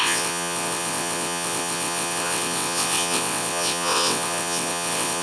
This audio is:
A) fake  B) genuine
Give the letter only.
A